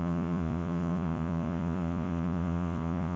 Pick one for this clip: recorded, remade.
remade